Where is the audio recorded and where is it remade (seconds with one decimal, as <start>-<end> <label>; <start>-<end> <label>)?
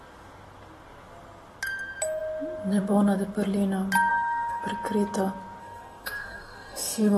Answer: 0.0-4.1 recorded; 4.1-4.6 remade; 4.6-5.6 recorded; 5.6-7.2 remade